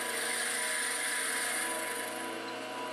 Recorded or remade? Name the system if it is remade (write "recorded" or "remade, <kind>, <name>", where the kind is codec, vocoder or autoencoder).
recorded